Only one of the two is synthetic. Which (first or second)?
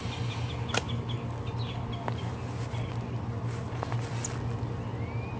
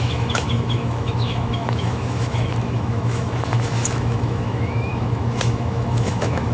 second